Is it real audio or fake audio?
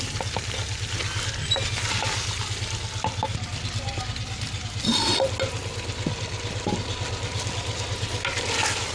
real